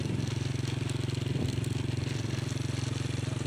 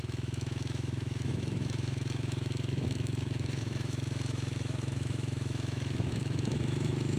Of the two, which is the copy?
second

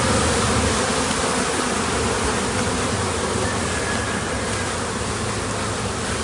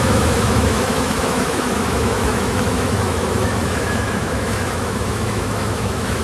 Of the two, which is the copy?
second